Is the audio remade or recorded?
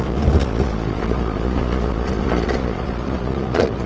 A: remade